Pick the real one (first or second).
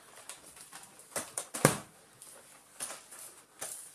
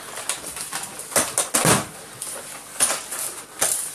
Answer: second